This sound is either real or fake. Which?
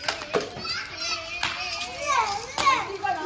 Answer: real